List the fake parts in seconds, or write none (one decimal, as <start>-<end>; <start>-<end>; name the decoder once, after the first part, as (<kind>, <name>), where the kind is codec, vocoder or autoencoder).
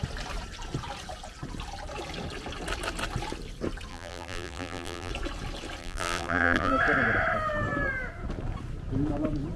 3.9-5.1 (vocoder, BigVGAN v2); 5.8-6.7